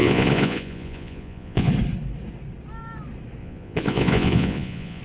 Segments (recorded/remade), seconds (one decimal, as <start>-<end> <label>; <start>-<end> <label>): 0.0-1.7 remade; 1.7-3.4 recorded; 3.4-5.0 remade